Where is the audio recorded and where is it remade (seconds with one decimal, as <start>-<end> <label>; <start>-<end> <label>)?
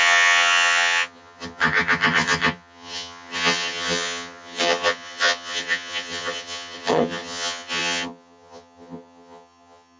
0.0-10.0 remade